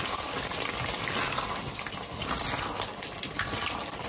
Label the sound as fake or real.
real